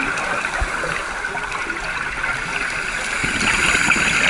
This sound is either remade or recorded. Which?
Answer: recorded